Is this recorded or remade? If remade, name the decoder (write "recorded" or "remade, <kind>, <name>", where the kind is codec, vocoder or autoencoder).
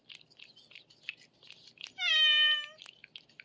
recorded